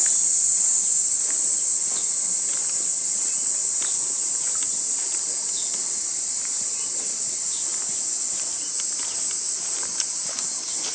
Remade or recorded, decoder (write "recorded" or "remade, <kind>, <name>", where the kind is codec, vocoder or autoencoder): recorded